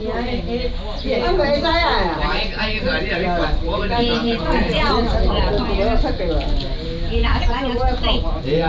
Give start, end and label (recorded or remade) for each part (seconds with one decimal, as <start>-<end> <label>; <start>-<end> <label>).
0.0-4.2 recorded; 4.2-4.9 remade; 4.9-7.2 recorded; 7.2-8.7 remade